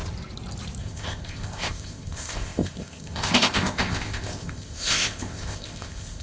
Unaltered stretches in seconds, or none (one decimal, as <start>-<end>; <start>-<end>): 0.0-0.8